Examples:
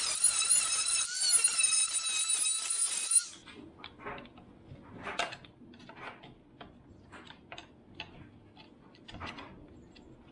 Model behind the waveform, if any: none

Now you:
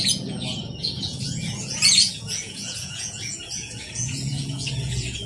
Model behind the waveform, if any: vocoder, Vocos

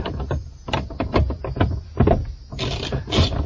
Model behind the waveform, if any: none